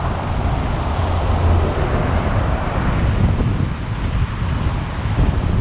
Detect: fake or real real